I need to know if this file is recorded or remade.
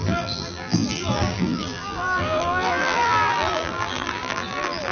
remade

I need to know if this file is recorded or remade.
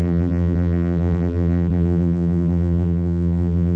remade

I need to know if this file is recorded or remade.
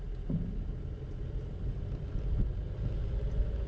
recorded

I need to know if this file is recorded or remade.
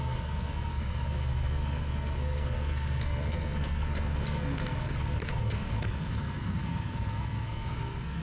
remade